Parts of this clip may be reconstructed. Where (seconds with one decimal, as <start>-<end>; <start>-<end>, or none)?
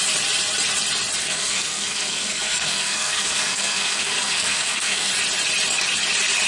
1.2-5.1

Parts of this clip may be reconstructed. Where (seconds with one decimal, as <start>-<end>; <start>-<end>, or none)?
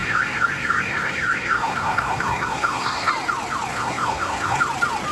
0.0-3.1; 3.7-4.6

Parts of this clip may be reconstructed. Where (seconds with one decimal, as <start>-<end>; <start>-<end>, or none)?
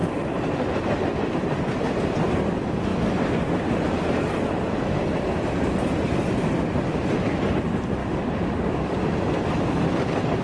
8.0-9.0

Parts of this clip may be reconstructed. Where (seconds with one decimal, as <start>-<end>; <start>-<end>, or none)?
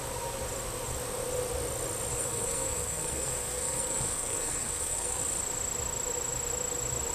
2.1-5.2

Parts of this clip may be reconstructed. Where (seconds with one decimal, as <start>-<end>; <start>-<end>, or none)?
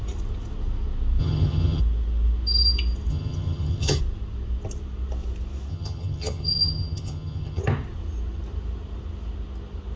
1.2-1.8; 3.1-4.0; 5.7-7.6